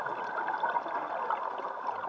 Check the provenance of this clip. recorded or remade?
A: recorded